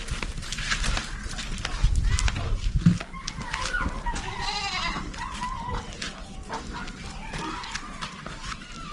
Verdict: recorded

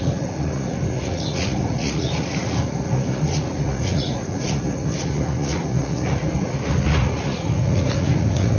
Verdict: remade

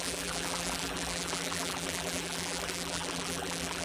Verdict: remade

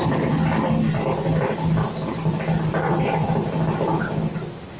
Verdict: recorded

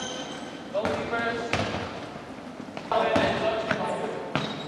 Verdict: recorded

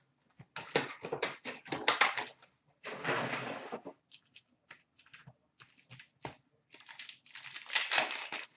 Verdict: recorded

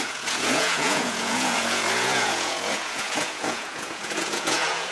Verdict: remade